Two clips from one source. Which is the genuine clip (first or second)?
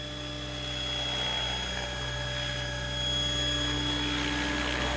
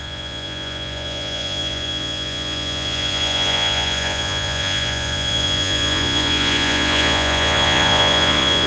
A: first